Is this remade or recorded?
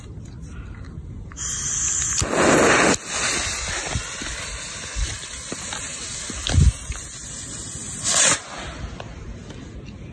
recorded